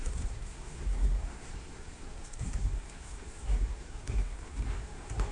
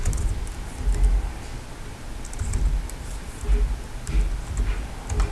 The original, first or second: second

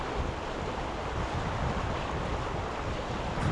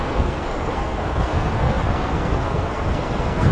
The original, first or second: first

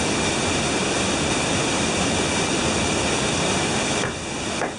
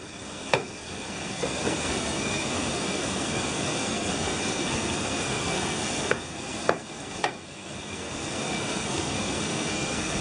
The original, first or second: first